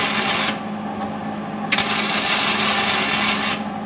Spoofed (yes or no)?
no